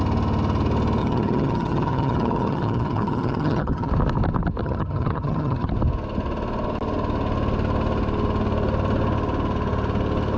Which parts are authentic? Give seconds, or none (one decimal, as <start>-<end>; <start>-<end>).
0.0-1.0; 3.9-4.6; 5.7-10.4